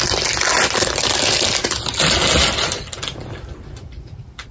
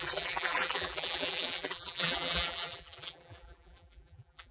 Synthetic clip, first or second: second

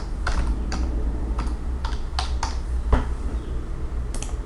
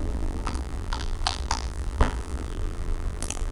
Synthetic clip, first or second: second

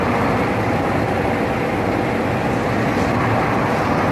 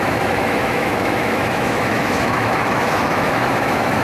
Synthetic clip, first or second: second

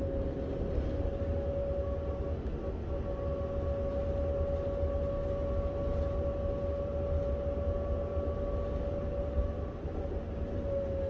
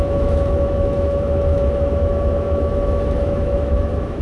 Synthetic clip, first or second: second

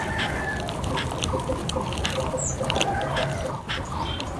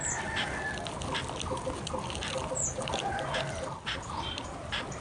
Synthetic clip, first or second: first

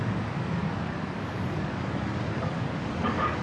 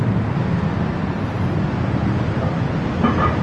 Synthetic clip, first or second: first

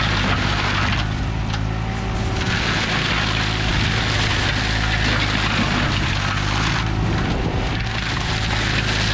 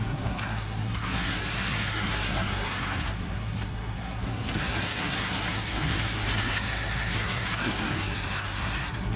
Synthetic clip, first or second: second